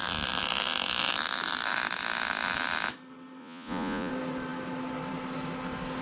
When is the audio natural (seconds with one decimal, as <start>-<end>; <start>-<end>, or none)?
0.0-3.4; 4.1-6.0